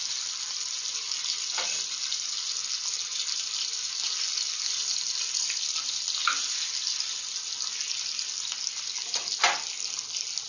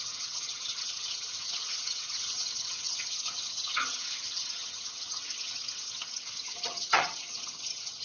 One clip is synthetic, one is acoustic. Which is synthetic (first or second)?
second